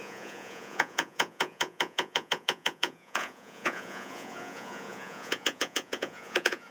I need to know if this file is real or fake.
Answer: fake